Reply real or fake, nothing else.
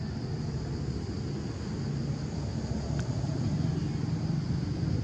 real